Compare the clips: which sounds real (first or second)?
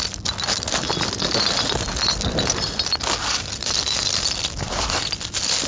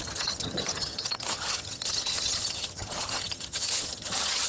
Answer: first